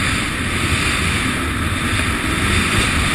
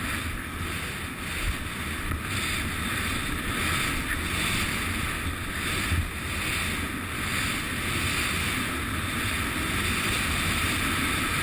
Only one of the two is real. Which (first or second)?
second